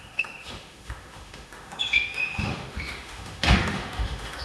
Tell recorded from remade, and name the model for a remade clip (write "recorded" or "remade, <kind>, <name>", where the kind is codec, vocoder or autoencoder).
remade, autoencoder, DAC-VAE